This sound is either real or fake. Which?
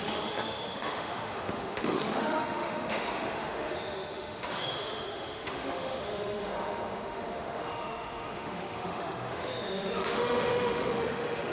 fake